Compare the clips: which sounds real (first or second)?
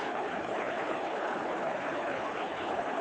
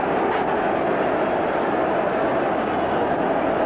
second